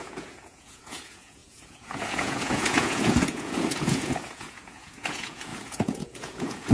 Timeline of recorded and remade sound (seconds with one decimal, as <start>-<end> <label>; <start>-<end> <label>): 0.0-6.7 remade